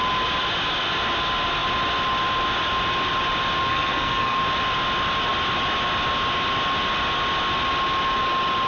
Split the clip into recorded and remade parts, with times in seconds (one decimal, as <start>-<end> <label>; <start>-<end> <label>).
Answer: 0.0-3.7 recorded; 3.7-4.4 remade; 4.4-8.7 recorded